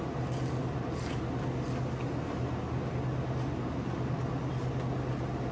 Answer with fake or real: real